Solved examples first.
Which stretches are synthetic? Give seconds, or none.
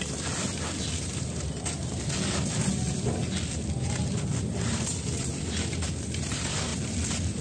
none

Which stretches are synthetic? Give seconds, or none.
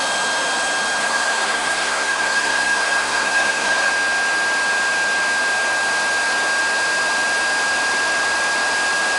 1.0-3.9 (codec, SNAC)